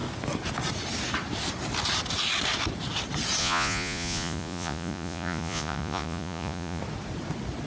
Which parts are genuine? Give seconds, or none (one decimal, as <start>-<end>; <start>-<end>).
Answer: 0.0-3.4; 6.8-7.7